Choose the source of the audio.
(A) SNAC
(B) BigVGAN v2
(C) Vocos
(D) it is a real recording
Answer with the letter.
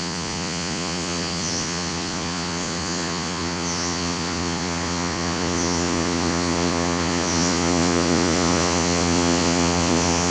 C